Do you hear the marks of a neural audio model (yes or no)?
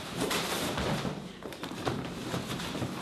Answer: yes